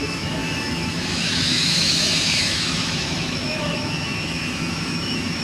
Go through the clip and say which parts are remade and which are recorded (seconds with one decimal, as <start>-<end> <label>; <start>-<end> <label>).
0.0-5.4 remade